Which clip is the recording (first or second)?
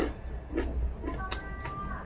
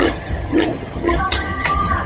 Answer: first